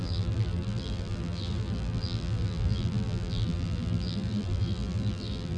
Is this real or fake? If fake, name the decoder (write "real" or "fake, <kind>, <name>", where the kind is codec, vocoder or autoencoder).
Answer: fake, vocoder, BigVGAN v2